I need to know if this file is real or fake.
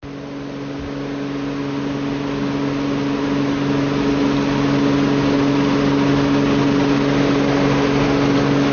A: real